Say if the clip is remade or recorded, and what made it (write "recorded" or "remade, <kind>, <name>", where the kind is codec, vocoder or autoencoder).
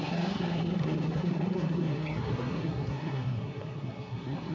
remade, codec, SNAC